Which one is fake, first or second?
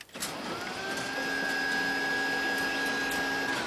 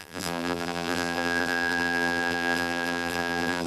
second